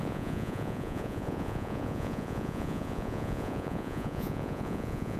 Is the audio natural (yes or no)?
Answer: no